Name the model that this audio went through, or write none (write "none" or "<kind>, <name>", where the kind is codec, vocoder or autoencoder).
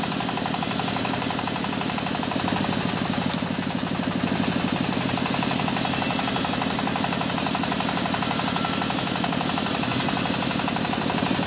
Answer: none